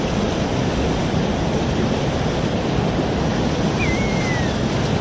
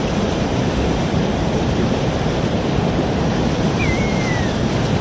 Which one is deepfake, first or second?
second